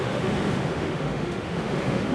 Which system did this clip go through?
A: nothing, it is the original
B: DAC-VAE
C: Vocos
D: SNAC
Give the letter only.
B